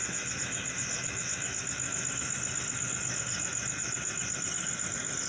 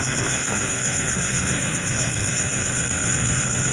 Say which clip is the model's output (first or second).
second